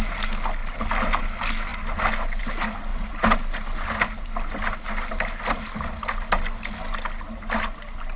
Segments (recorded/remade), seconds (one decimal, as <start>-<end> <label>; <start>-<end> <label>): 0.0-8.2 recorded